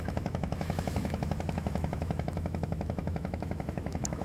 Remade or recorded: remade